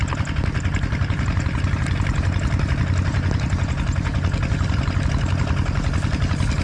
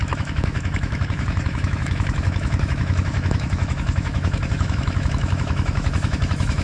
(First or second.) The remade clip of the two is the second